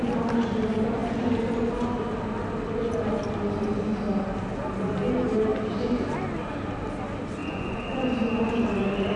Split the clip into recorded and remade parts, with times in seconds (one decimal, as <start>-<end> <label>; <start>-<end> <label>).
0.0-7.4 recorded; 7.4-8.0 remade; 8.0-9.2 recorded